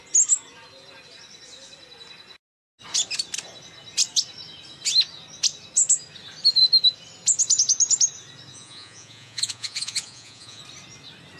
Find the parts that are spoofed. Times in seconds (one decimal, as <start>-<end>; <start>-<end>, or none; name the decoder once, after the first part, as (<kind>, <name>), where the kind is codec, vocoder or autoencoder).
8.5-10.6 (vocoder, Vocos)

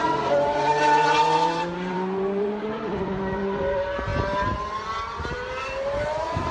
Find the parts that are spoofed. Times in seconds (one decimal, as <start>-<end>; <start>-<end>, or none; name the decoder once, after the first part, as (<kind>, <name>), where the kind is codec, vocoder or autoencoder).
0.0-4.1 (vocoder, BigVGAN v2); 5.2-6.5

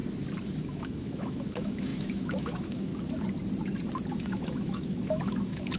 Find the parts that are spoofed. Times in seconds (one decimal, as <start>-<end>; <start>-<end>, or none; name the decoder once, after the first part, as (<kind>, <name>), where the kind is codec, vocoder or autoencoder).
0.6-2.9 (autoencoder, DAC-VAE); 4.1-5.8

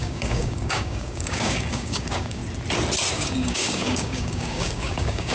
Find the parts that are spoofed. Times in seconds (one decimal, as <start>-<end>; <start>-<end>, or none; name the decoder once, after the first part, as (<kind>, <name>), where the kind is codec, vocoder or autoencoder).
0.0-2.4 (codec, DAC); 3.1-5.3

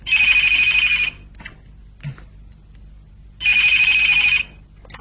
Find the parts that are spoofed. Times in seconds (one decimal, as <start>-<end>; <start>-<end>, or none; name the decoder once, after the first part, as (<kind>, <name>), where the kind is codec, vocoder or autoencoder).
none

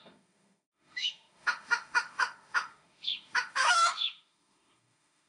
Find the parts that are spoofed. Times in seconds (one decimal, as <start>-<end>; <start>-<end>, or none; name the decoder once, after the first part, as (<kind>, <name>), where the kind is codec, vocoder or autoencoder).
0.0-5.3 (autoencoder, DAC-VAE)

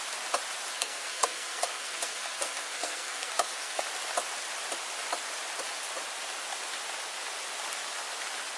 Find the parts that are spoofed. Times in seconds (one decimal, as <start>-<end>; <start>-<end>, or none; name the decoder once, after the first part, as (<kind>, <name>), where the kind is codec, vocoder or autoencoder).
0.7-3.8 (codec, SNAC)